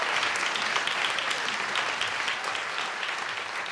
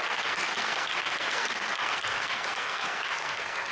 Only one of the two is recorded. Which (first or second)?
first